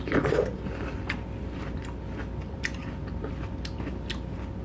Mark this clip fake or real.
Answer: real